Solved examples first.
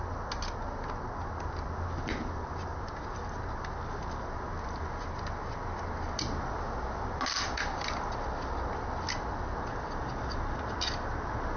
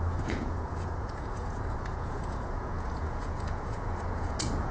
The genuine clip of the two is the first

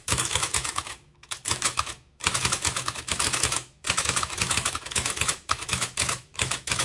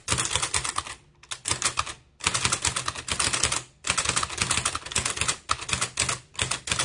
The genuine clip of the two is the second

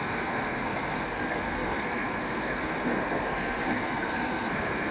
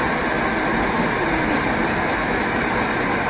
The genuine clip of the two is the second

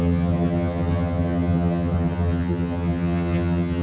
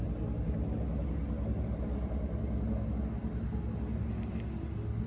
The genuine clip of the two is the second